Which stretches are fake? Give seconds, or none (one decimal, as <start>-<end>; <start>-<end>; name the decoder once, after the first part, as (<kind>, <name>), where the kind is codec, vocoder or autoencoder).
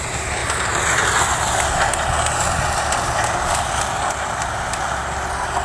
none